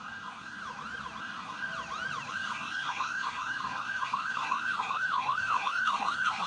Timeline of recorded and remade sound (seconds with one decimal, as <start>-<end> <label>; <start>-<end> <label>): 0.0-0.6 remade; 0.6-1.2 recorded; 1.2-1.7 remade; 1.7-2.3 recorded; 2.3-6.5 remade